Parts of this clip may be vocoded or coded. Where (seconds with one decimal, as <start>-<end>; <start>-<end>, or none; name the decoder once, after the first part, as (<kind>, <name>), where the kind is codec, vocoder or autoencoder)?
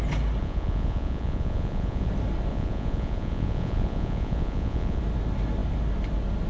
0.4-2.1 (vocoder, Vocos); 2.5-5.0